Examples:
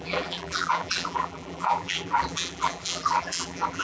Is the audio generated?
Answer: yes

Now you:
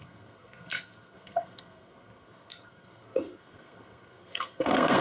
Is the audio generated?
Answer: yes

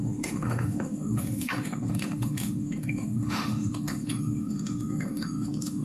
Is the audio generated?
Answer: yes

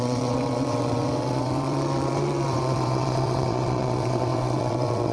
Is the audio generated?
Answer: yes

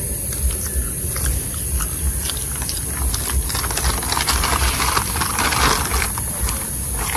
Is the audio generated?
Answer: no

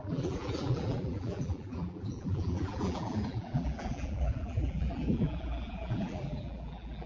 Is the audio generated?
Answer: yes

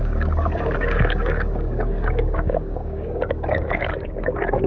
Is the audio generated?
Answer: yes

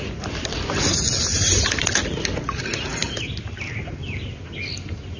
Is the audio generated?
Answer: no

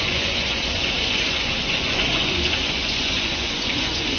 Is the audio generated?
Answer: yes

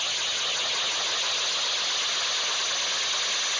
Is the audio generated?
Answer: no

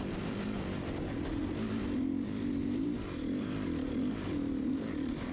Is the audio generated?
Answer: yes